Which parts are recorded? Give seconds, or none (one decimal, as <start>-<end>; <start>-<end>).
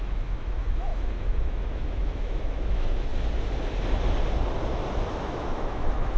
3.1-5.1